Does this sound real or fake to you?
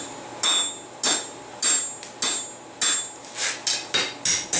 real